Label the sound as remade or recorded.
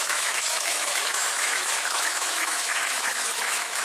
remade